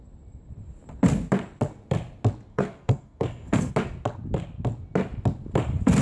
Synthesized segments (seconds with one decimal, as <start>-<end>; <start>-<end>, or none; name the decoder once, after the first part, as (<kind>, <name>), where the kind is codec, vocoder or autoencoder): 2.5-3.7 (codec, SNAC)